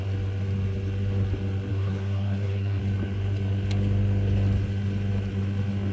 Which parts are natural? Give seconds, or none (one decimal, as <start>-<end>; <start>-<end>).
0.0-1.7; 2.8-5.9